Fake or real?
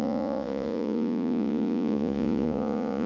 fake